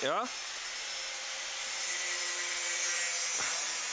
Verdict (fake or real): real